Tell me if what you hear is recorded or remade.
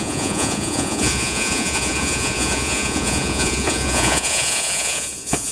remade